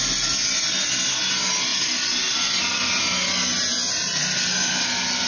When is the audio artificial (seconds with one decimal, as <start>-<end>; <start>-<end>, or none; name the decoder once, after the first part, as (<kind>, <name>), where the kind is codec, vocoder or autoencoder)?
none